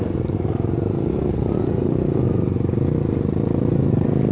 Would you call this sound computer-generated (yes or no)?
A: no